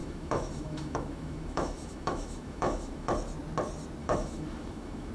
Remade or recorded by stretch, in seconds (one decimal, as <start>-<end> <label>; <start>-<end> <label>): 0.0-3.1 remade; 3.1-4.0 recorded; 4.0-5.1 remade

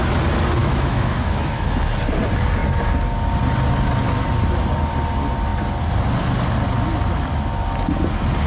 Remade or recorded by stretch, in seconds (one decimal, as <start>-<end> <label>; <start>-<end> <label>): 0.0-0.6 recorded; 0.6-1.8 remade; 1.8-8.5 recorded

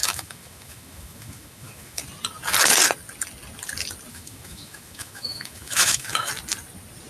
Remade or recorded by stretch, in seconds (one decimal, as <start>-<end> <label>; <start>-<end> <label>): 0.0-2.0 remade; 2.0-4.1 recorded; 4.1-6.3 remade; 6.3-7.1 recorded

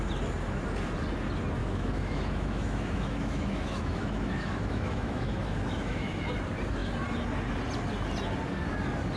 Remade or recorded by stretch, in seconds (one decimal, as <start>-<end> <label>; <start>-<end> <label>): 0.0-1.6 recorded; 1.6-6.3 remade; 6.3-9.2 recorded

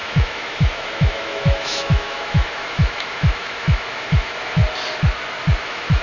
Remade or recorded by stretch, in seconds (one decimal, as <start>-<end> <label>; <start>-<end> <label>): 0.0-4.6 remade; 4.6-5.6 recorded; 5.6-6.0 remade

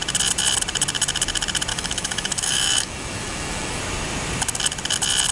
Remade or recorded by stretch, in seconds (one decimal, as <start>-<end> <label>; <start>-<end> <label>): 0.0-1.7 recorded; 1.7-3.8 remade; 3.8-5.3 recorded

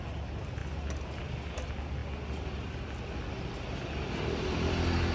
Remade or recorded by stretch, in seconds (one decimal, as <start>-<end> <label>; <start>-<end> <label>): 0.0-5.1 recorded